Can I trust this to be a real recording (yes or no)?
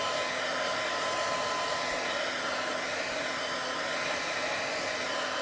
yes